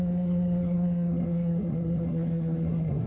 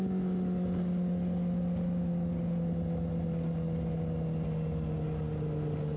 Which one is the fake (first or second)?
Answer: first